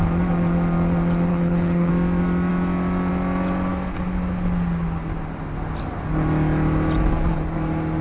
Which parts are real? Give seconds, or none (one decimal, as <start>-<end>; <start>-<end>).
0.0-1.3; 1.9-8.0